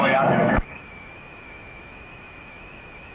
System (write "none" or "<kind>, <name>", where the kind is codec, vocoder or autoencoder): autoencoder, DAC-VAE